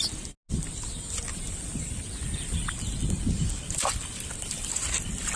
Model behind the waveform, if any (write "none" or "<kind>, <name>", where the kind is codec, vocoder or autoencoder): none